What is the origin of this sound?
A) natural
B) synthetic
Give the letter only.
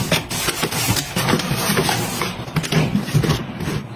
A